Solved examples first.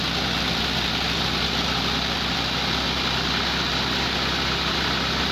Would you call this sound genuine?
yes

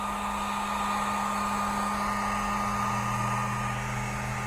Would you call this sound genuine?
yes